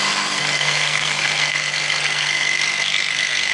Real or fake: fake